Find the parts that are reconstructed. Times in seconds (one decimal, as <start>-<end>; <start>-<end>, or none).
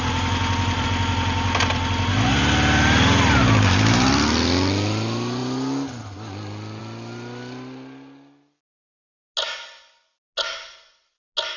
none